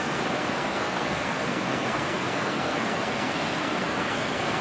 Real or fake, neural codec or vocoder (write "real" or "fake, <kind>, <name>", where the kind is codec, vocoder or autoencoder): fake, codec, SNAC